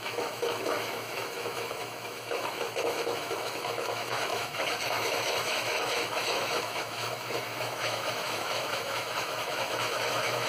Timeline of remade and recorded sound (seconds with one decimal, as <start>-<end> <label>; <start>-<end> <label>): 0.0-10.5 remade